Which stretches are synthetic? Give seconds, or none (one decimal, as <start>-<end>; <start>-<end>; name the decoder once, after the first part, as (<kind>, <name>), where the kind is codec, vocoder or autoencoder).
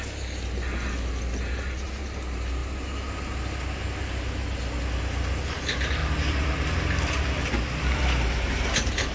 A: none